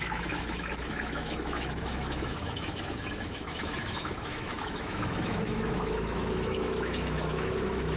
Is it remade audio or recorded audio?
remade